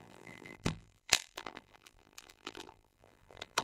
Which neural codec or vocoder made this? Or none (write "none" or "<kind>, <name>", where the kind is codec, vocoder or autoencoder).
vocoder, BigVGAN v2